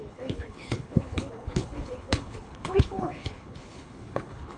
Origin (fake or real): fake